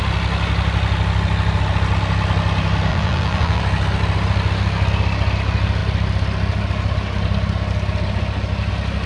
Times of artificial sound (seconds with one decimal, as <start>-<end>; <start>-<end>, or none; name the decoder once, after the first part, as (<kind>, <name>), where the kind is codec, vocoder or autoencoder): 2.9-3.6 (vocoder, BigVGAN v2)